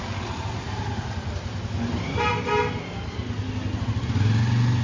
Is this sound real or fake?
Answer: real